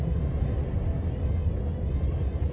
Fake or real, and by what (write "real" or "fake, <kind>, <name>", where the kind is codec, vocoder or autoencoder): real